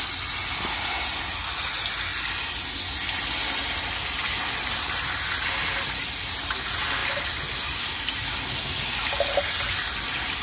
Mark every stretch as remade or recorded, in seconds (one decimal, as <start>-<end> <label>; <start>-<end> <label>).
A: 0.0-10.4 recorded